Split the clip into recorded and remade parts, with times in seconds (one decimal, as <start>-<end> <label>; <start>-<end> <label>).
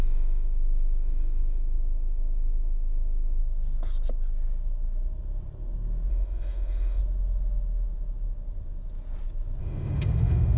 0.0-3.4 remade; 3.4-6.1 recorded; 6.1-7.0 remade; 7.0-9.6 recorded; 9.6-10.6 remade